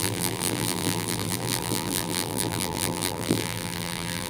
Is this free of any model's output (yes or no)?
no